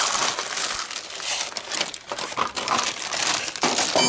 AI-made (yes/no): no